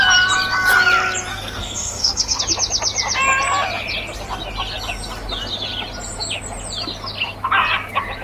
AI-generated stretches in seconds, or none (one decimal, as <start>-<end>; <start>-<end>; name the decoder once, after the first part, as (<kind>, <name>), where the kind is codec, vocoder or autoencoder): 1.3-2.4 (codec, SNAC)